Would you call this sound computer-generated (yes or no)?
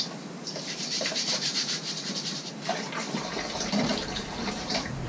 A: yes